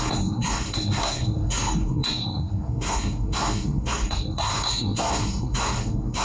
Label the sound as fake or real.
fake